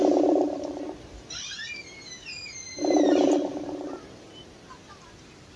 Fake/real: fake